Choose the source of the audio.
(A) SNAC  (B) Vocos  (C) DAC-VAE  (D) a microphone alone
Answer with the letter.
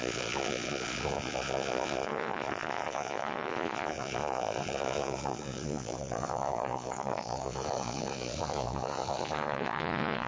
B